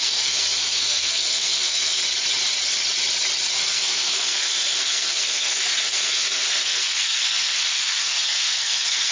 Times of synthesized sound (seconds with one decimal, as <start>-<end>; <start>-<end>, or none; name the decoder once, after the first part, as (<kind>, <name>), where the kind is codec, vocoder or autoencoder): 0.0-2.0 (codec, SNAC); 3.5-9.1